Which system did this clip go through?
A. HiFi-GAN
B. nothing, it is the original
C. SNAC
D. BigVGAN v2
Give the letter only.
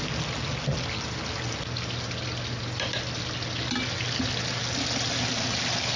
B